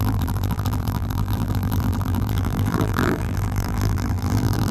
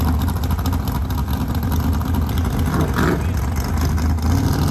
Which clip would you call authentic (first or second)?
second